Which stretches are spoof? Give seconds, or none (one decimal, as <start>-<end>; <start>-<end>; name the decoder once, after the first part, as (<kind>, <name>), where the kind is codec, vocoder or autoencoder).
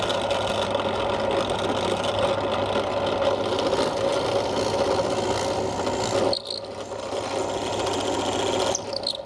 none